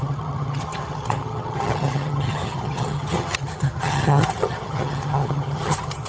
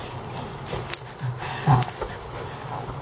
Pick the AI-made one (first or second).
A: first